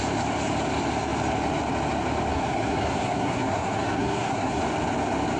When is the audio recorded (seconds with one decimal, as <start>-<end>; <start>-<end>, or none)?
0.0-2.3; 4.6-5.4